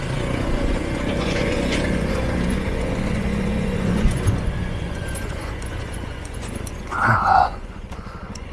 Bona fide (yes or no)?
no